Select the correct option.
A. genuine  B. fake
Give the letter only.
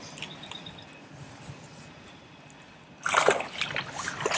A